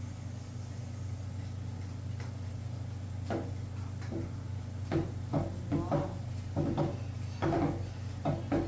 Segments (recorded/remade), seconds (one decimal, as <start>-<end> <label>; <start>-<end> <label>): 0.0-8.7 recorded